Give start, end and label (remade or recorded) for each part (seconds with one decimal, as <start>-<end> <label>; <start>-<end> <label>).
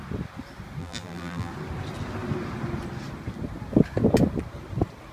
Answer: 0.0-0.8 recorded; 0.8-1.5 remade; 1.5-5.1 recorded